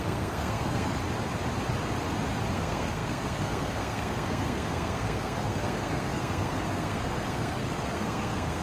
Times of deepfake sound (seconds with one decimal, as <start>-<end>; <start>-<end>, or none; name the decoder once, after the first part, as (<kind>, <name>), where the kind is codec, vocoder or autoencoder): 0.0-1.0 (codec, SNAC); 2.5-8.6